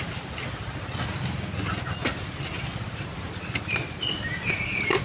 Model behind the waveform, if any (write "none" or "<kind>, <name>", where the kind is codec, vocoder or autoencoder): none